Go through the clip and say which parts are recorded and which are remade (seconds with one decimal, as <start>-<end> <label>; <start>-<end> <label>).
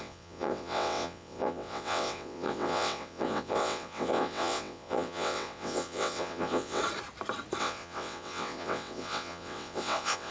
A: 0.0-6.8 remade; 6.8-7.6 recorded; 7.6-10.3 remade